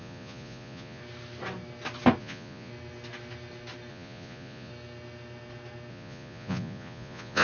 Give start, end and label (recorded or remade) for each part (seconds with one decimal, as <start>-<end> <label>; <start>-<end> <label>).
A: 0.0-1.0 remade; 1.0-2.2 recorded; 2.2-2.7 remade; 2.7-3.9 recorded; 3.9-4.7 remade; 4.7-5.9 recorded; 5.9-7.4 remade

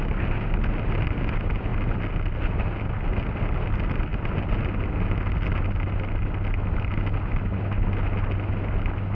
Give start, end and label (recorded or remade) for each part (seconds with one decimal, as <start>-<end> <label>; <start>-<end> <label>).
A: 0.0-9.1 recorded

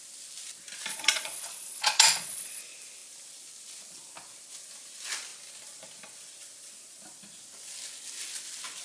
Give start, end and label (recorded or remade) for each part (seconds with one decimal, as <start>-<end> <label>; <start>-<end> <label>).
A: 0.0-0.9 recorded; 0.9-2.6 remade; 2.6-8.8 recorded

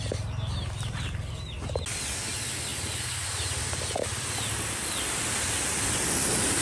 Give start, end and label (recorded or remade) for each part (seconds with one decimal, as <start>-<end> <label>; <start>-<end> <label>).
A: 0.0-6.6 recorded

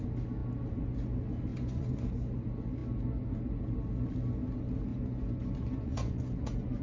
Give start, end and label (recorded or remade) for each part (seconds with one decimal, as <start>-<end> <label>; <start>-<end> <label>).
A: 0.0-1.5 recorded; 1.5-2.1 remade; 2.1-4.9 recorded; 4.9-6.8 remade

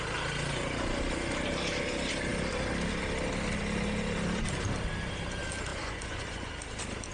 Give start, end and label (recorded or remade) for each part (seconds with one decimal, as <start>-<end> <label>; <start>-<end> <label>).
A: 0.0-5.7 recorded; 5.7-6.5 remade; 6.5-7.1 recorded

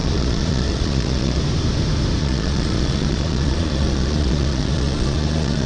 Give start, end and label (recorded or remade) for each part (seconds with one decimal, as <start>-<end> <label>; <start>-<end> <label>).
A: 0.0-1.4 remade; 1.4-2.2 recorded; 2.2-5.7 remade

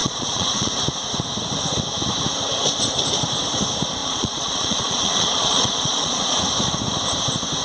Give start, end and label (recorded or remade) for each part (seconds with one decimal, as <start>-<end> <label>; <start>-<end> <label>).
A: 0.0-0.7 remade; 0.7-4.0 recorded; 4.0-6.4 remade; 6.4-7.6 recorded